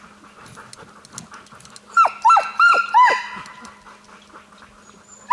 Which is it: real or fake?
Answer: real